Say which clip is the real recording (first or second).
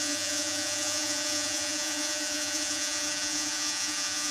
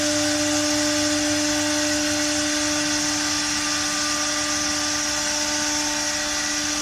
second